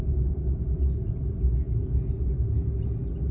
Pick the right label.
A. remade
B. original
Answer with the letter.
B